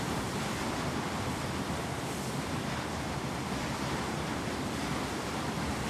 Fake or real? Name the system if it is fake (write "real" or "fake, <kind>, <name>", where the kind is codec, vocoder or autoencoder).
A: fake, vocoder, BigVGAN v2